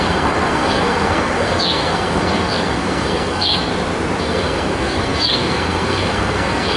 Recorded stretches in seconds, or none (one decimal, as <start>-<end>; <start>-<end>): 3.7-4.2